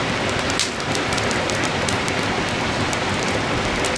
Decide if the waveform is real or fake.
real